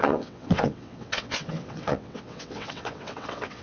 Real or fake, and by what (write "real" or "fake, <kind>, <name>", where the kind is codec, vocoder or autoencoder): fake, vocoder, WaveNeXt